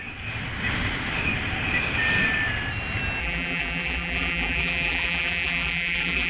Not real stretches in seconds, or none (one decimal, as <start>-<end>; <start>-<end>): 3.2-6.3